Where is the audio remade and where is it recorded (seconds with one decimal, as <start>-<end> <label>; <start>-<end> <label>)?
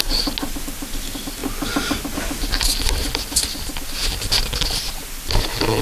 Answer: 0.0-5.8 recorded